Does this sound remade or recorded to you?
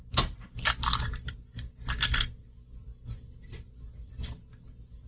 recorded